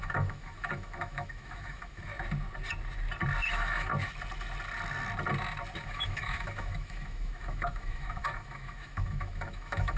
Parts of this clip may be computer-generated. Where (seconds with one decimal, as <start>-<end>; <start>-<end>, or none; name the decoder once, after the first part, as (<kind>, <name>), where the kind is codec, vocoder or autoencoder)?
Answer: 0.0-2.1 (autoencoder, DAC-VAE); 3.5-3.9; 5.8-10.0